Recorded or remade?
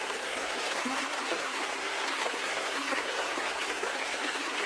remade